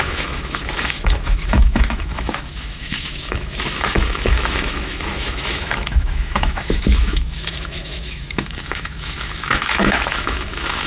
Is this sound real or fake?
fake